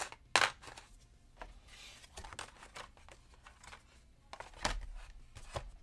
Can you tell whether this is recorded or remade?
recorded